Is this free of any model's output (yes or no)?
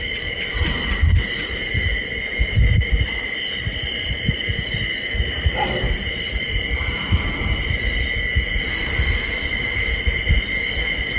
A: yes